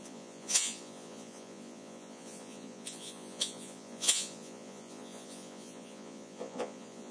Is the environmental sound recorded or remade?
remade